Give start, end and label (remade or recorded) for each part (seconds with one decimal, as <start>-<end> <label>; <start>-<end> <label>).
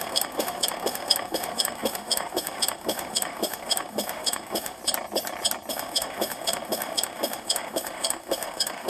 0.0-4.8 remade; 4.8-5.7 recorded; 5.7-8.9 remade